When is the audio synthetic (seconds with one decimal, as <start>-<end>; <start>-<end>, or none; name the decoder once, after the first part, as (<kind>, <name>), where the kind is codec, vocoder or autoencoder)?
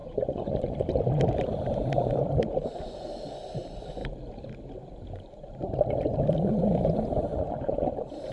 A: 0.0-0.9 (vocoder, Vocos); 7.3-7.9